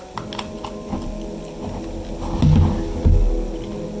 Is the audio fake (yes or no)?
no